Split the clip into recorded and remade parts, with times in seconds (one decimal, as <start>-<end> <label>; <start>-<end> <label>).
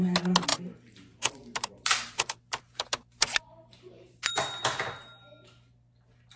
0.0-0.5 recorded; 0.5-4.3 remade; 4.3-6.4 recorded